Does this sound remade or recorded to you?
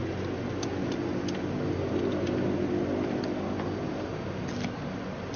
recorded